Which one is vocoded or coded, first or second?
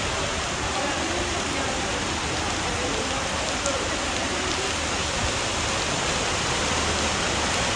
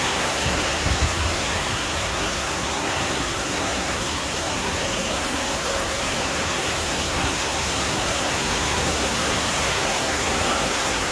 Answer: second